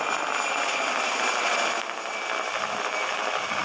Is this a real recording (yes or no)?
yes